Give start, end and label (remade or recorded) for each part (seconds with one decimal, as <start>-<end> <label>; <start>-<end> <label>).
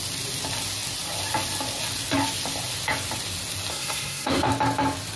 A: 0.0-3.7 recorded; 3.7-4.5 remade; 4.5-5.2 recorded